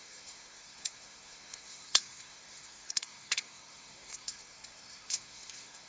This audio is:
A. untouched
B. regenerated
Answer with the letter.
B